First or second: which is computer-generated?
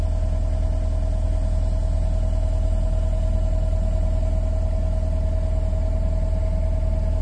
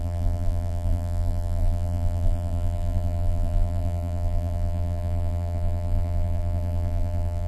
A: second